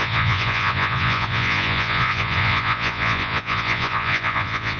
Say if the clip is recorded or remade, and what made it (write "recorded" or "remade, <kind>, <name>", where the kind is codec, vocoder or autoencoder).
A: remade, vocoder, Vocos